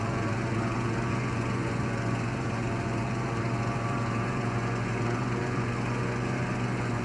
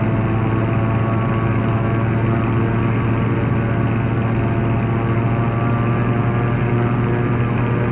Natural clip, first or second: second